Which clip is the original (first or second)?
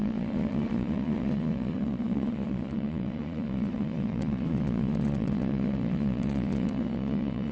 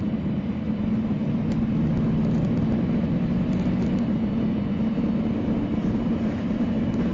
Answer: second